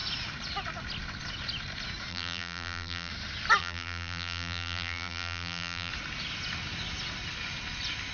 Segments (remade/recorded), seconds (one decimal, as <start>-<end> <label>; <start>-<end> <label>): 0.0-2.1 recorded; 2.1-3.1 remade; 3.1-3.6 recorded; 3.6-5.9 remade; 5.9-8.1 recorded